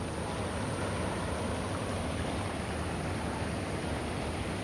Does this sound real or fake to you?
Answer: real